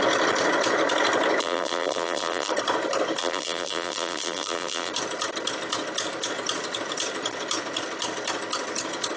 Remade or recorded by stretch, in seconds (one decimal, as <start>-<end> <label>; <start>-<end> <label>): 0.0-1.4 recorded; 1.4-2.5 remade; 2.5-3.2 recorded; 3.2-4.9 remade; 4.9-9.2 recorded